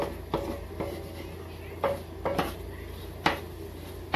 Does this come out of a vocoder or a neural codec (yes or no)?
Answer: no